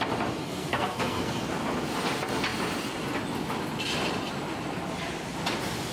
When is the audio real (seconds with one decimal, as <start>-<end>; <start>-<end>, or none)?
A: 0.0-0.4; 1.6-5.9